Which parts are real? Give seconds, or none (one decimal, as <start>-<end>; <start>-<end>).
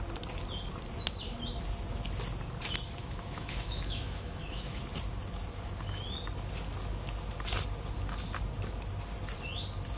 0.0-3.0; 4.8-10.0